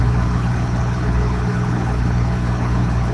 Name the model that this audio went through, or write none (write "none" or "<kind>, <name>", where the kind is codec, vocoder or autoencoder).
codec, HILCodec